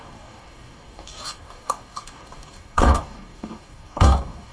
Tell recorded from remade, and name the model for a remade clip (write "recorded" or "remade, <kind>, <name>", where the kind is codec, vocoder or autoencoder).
remade, codec, DAC